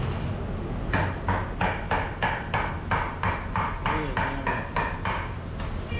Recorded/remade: recorded